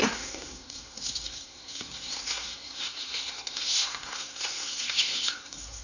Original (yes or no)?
no